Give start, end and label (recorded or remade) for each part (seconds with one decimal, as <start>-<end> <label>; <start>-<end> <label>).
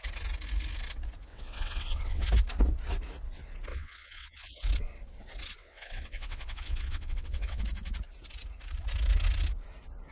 0.0-1.3 recorded; 1.3-2.2 remade; 2.2-3.7 recorded; 3.7-4.7 remade; 4.7-5.6 recorded; 5.6-7.6 remade; 7.6-10.1 recorded